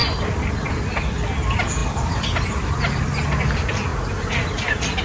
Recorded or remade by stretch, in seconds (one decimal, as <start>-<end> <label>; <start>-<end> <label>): 0.0-5.0 recorded